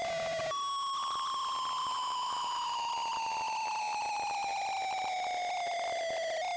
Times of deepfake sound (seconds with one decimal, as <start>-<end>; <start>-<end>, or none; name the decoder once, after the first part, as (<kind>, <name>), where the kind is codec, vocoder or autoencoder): 1.8-2.9 (autoencoder, DAC-VAE)